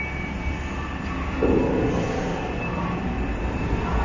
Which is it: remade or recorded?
recorded